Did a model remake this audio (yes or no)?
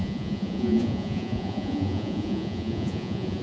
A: yes